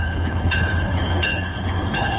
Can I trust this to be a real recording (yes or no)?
no